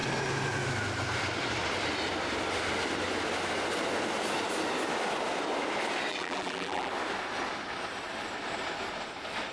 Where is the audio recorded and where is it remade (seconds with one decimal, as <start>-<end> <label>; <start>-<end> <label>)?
0.0-6.1 recorded; 6.1-6.9 remade; 6.9-9.5 recorded